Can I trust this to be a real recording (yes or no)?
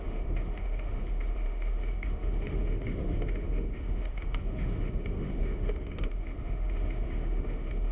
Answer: no